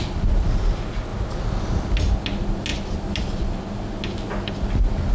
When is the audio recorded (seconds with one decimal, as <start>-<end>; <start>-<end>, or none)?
0.0-5.1